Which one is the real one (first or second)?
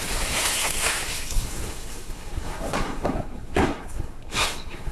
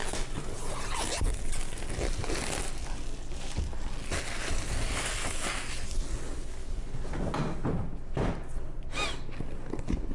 second